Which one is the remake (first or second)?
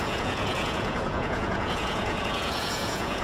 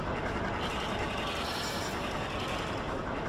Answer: first